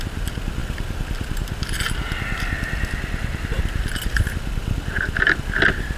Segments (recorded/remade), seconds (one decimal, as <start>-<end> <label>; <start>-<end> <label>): 0.0-6.0 recorded